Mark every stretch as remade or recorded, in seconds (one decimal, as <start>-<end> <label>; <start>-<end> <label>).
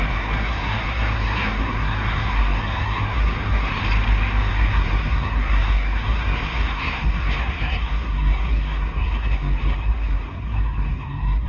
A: 0.0-3.8 remade; 3.8-4.5 recorded; 4.5-11.5 remade